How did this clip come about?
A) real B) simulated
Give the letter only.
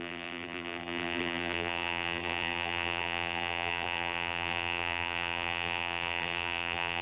B